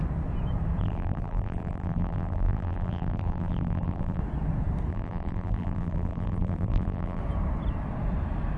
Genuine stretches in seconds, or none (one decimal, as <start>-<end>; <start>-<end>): 0.0-0.8; 4.2-4.9; 7.2-8.6